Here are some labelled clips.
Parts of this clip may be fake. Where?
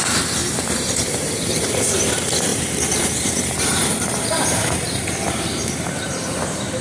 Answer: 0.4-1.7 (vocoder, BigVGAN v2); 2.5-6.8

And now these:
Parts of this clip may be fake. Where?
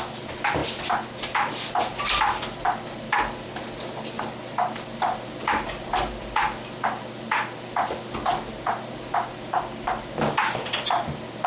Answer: none